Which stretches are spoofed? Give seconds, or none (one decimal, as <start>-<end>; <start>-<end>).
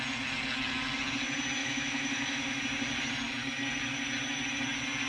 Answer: 1.6-2.6